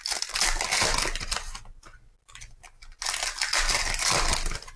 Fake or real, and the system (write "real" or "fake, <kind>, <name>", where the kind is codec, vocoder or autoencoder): real